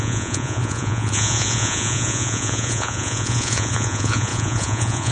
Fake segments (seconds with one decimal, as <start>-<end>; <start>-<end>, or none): 0.0-5.1

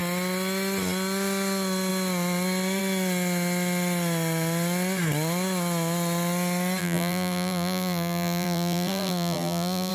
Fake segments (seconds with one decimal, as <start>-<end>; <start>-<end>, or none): 6.8-9.9

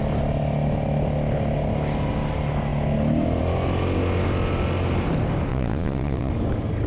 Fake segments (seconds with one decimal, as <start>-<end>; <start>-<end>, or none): 5.5-6.3

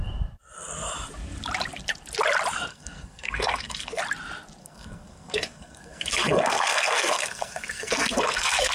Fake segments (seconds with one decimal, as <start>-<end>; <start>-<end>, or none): 2.7-4.0; 4.6-8.7

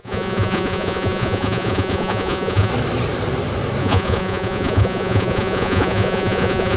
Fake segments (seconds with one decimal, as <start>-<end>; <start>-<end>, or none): 0.0-2.7; 3.8-6.8